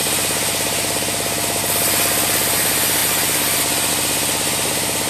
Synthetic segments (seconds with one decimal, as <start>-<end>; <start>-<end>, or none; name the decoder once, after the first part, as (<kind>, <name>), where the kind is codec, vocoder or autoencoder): 0.0-1.6 (vocoder, BigVGAN v2); 3.0-3.9